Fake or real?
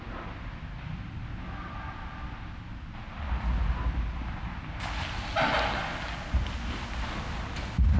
real